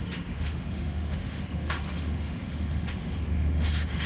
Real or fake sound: fake